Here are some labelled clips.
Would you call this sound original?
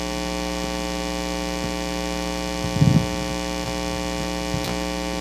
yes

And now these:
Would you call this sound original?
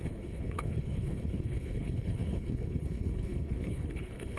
no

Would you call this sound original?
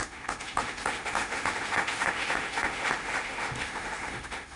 no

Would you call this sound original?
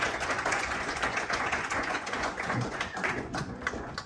no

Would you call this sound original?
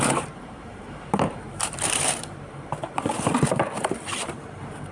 no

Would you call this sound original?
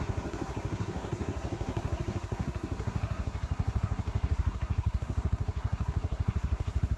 no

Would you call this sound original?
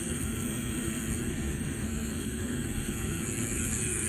no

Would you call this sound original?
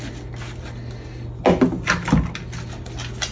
yes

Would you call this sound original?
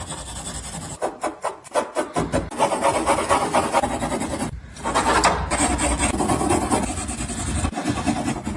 yes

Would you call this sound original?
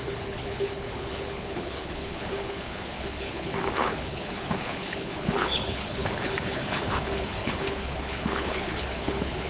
no